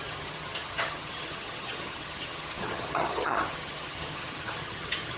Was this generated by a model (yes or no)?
yes